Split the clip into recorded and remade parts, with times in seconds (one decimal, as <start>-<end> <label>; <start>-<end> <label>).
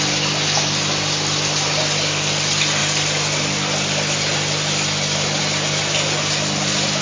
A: 0.0-7.0 recorded